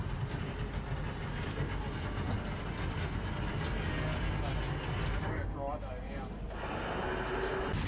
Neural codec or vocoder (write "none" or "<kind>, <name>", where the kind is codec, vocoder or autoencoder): none